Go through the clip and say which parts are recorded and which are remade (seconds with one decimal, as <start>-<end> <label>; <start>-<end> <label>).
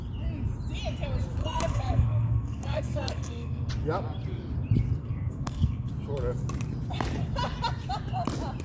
0.0-1.4 recorded; 1.4-3.7 remade; 3.7-5.0 recorded; 5.0-5.9 remade; 5.9-8.6 recorded